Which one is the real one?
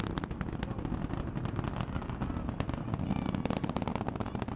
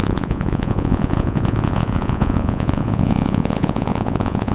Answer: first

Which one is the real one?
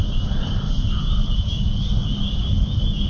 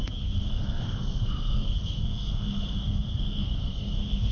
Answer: first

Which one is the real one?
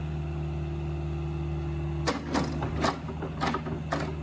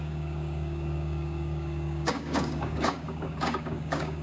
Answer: first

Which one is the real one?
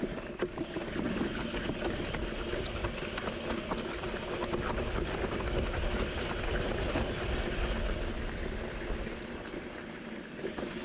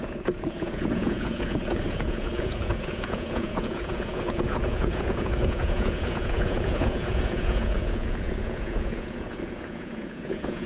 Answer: first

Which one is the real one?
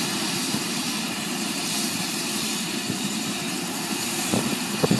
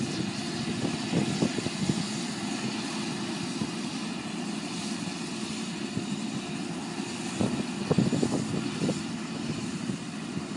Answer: second